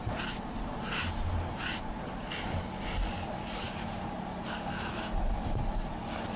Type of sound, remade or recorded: recorded